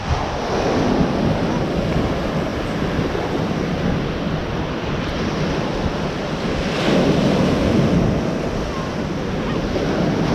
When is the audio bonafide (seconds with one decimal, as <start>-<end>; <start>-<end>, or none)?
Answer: 0.0-10.3